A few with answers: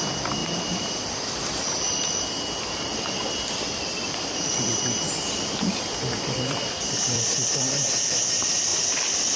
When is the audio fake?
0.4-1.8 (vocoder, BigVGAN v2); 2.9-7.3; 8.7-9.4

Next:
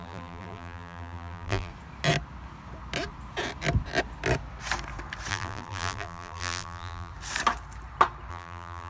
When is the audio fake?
0.0-1.7 (vocoder, BigVGAN v2); 5.3-7.1; 8.3-8.9

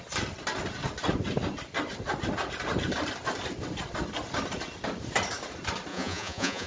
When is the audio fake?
5.9-6.7 (vocoder, Vocos)

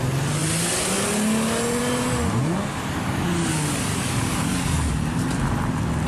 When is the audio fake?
3.9-4.9 (codec, DAC)

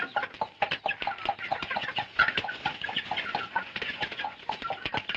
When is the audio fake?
1.5-4.6 (vocoder, Vocos)

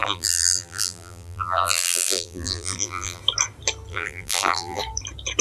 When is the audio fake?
0.0-3.2 (vocoder, BigVGAN v2); 3.9-4.8

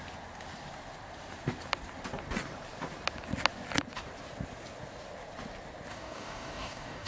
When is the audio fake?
5.9-7.1 (codec, DAC)

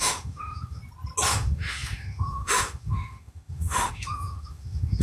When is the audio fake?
0.0-0.8 (autoencoder, DAC-VAE); 1.3-5.0